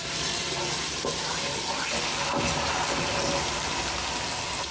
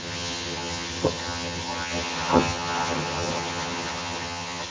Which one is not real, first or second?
second